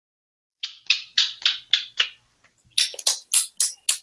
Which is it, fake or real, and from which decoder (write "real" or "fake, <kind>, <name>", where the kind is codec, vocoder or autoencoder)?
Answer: real